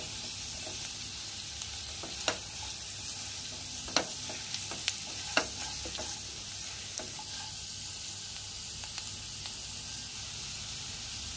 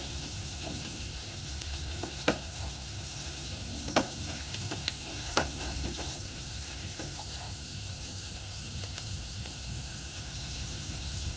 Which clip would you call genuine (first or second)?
first